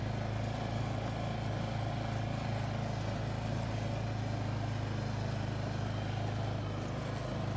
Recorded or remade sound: recorded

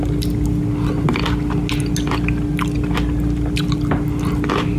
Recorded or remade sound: recorded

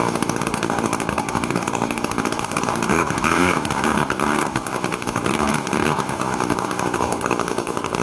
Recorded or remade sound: remade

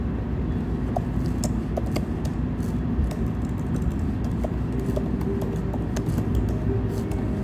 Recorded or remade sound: recorded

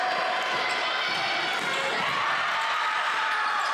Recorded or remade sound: recorded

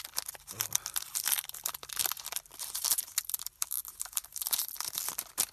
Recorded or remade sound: recorded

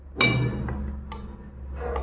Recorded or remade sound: recorded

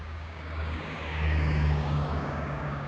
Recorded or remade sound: remade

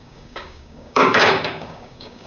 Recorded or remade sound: remade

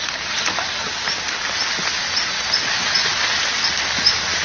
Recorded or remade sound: recorded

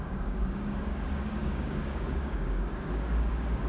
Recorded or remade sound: remade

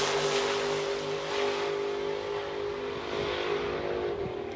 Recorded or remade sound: recorded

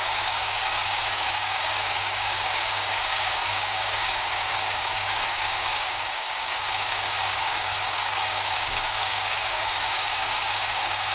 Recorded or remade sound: remade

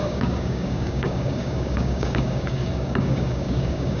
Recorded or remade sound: remade